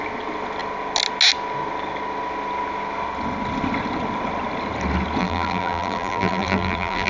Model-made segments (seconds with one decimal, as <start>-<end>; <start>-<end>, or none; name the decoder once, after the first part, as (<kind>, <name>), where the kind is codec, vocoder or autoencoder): 5.2-7.1 (vocoder, BigVGAN v2)